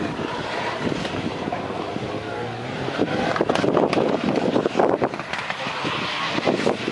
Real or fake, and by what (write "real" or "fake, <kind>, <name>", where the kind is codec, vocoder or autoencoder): fake, vocoder, BigVGAN v2